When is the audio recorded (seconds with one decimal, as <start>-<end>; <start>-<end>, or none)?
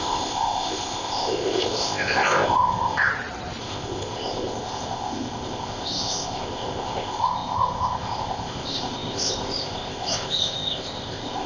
3.1-3.6